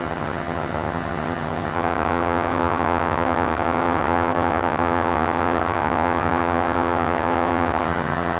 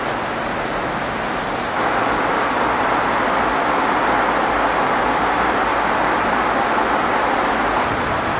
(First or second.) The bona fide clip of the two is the second